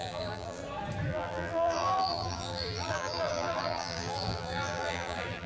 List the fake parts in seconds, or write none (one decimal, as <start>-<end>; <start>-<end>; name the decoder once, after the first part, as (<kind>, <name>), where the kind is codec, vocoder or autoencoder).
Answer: 0.0-0.6 (vocoder, BigVGAN v2); 1.1-5.5

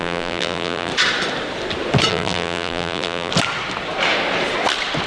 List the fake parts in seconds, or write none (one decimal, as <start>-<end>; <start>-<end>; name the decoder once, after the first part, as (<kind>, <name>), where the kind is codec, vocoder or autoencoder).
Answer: 0.0-0.9 (vocoder, BigVGAN v2); 2.1-3.3

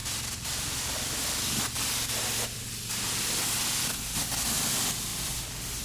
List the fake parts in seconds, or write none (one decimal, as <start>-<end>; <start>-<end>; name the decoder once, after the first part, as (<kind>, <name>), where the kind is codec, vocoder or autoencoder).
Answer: 0.0-2.9 (vocoder, BigVGAN v2); 5.1-5.8